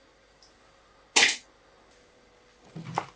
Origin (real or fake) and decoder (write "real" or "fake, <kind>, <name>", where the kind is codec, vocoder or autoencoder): real